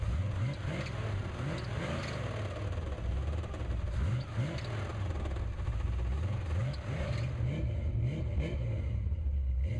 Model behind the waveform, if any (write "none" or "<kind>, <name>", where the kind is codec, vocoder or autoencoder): none